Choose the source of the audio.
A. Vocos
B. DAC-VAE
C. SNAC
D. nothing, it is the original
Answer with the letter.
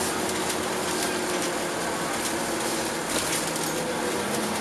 D